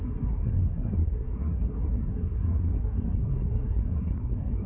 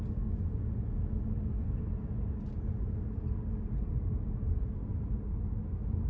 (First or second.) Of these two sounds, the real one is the second